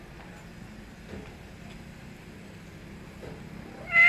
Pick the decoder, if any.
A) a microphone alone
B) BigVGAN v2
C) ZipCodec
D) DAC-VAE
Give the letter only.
A